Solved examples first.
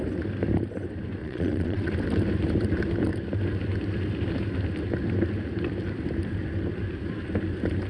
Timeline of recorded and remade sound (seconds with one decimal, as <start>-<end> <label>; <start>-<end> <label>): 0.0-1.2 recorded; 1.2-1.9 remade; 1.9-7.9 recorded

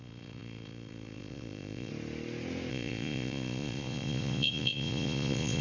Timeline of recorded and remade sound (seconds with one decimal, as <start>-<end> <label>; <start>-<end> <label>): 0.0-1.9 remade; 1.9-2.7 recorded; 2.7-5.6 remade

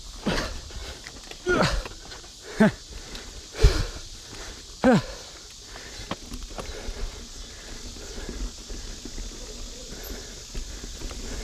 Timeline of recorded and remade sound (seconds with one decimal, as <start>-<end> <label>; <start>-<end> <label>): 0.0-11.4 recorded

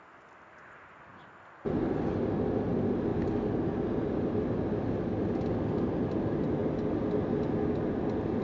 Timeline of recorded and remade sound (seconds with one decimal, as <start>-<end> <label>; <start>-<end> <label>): 0.0-8.4 recorded